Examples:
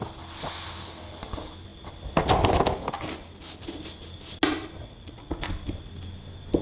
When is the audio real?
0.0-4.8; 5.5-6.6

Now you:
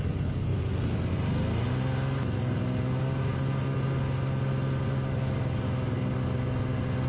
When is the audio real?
0.0-7.1

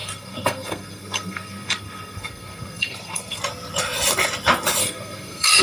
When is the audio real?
3.4-4.8

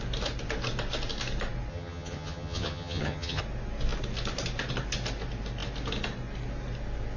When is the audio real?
0.0-1.7; 3.4-7.2

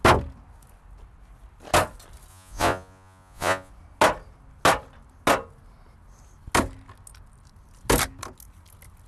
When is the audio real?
0.0-2.3; 3.7-9.1

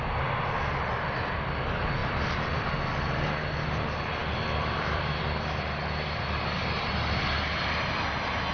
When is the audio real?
0.0-2.0; 2.7-4.2; 5.2-8.5

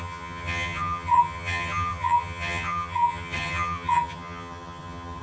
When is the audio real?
none